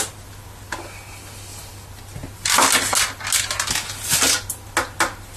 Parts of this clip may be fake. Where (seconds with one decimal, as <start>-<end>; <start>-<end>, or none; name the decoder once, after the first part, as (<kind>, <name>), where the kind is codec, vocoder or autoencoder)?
none